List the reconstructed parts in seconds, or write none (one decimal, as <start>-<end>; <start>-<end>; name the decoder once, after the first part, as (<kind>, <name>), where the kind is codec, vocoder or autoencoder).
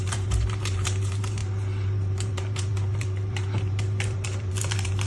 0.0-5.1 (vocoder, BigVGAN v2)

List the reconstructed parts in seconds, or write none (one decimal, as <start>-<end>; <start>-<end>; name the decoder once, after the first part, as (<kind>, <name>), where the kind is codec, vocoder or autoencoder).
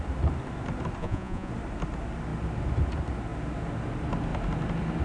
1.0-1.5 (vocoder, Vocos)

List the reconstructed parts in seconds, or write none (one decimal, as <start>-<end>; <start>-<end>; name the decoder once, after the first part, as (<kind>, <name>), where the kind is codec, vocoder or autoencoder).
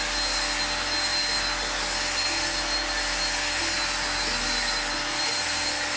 none